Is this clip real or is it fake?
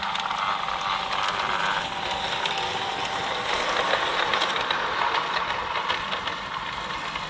real